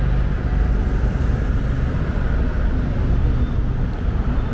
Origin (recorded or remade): remade